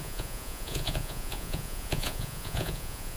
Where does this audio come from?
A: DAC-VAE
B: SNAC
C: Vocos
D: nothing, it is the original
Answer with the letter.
C